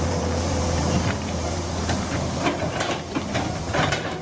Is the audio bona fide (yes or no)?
no